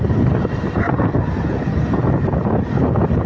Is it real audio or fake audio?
real